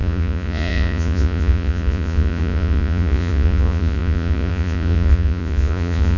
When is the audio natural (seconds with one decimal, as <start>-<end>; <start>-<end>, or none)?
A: none